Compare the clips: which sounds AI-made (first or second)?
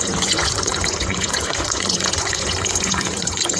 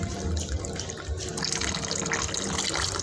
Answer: first